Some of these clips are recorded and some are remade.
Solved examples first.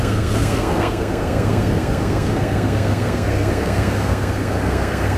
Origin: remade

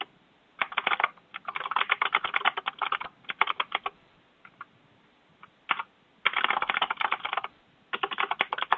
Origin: recorded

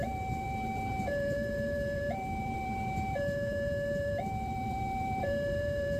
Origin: remade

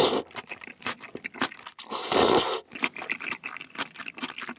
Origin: recorded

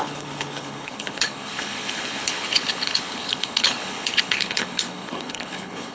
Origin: remade